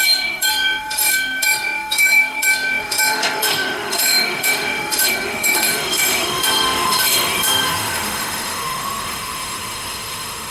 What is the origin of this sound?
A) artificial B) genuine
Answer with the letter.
A